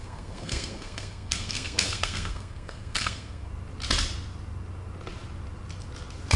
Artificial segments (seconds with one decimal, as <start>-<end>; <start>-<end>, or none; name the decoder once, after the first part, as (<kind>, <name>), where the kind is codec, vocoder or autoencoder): 0.0-3.5 (codec, SNAC)